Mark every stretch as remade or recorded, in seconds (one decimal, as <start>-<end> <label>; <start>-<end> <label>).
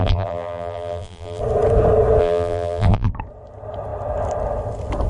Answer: 0.0-1.4 remade; 1.4-2.2 recorded; 2.2-3.1 remade; 3.1-5.1 recorded